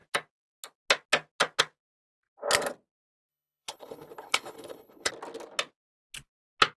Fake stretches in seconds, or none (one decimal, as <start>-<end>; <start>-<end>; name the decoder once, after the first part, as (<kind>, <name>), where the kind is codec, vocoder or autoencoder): 3.3-5.1 (codec, HILCodec)